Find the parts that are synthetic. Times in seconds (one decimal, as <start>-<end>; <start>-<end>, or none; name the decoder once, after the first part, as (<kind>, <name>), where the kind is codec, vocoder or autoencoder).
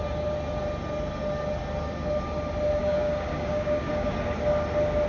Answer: 2.8-4.1 (codec, DAC)